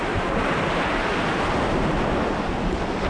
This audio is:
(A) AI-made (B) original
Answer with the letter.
B